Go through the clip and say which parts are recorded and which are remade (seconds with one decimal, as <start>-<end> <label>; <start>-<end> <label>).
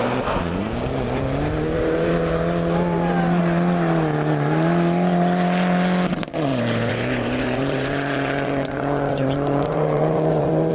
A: 0.0-6.5 recorded; 6.5-10.7 remade